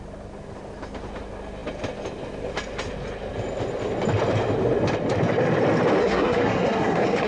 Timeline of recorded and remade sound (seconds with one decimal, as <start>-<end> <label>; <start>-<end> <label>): 0.0-6.0 recorded; 6.0-7.3 remade